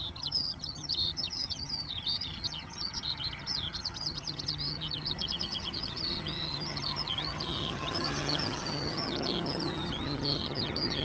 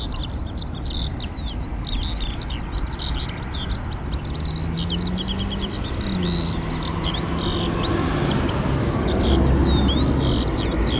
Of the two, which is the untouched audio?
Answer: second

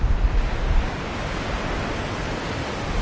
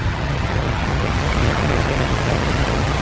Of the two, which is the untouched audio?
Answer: first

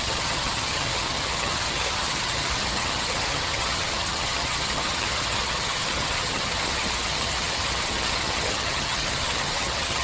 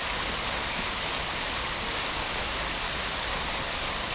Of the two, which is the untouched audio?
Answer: second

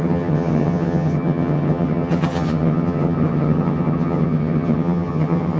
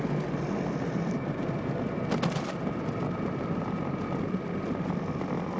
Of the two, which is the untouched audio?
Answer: second